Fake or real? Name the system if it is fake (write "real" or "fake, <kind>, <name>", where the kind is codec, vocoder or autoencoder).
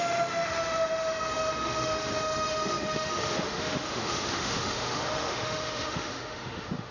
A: fake, autoencoder, DAC-VAE